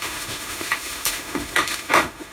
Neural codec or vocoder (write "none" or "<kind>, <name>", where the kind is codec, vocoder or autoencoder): autoencoder, DAC-VAE